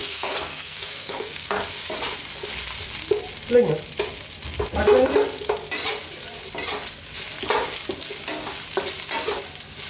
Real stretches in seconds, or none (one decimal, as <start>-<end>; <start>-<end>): 1.6-9.9